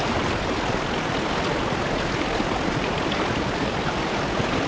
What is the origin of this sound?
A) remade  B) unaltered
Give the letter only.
B